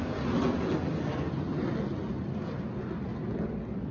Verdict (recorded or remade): recorded